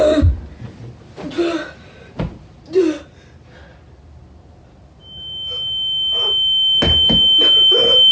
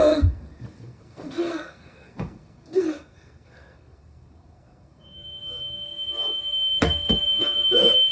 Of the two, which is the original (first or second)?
first